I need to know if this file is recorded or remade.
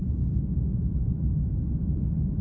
recorded